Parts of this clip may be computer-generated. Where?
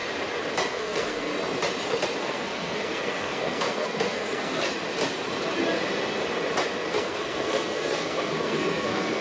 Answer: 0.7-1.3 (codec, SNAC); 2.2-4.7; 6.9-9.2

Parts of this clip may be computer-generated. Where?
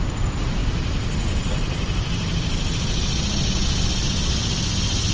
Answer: none